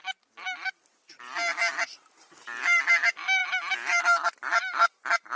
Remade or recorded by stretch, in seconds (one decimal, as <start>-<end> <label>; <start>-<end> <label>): 0.0-5.4 recorded